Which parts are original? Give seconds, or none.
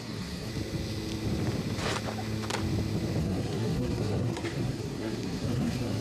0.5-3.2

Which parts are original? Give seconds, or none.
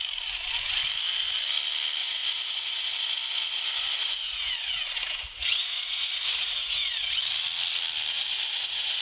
0.0-2.0; 6.9-8.1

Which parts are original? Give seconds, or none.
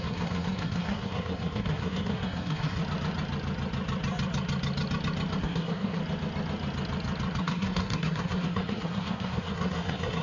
2.8-5.4; 6.0-7.4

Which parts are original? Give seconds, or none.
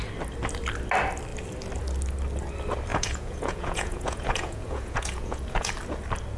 0.0-2.9; 5.7-6.4